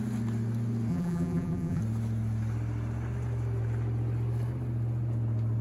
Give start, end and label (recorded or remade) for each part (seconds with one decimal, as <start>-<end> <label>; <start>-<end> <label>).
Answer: 0.0-0.9 recorded; 0.9-1.8 remade; 1.8-5.6 recorded